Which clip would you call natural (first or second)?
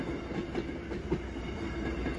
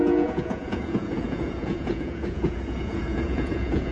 first